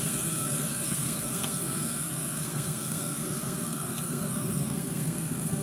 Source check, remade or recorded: remade